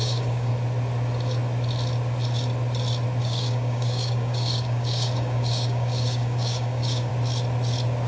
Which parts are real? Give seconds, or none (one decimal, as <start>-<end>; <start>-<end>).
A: 0.5-3.2; 7.1-8.1